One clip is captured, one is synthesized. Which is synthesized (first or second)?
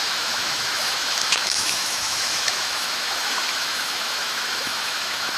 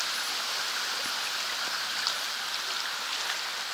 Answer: first